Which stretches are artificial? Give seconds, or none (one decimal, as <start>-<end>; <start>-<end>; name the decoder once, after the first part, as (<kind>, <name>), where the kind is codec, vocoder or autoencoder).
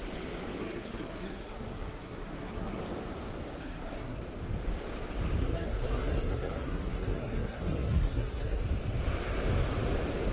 0.6-2.8 (codec, SNAC); 3.6-4.2; 5.4-8.6